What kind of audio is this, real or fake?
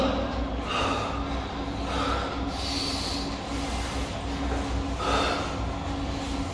real